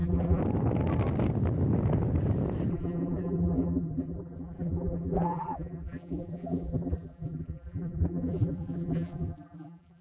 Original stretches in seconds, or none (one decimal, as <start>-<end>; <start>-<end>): 0.4-2.7